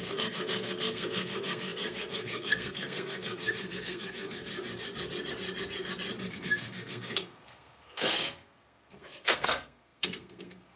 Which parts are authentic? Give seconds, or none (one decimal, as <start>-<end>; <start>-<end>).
4.5-6.3